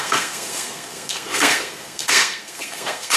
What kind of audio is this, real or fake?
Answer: fake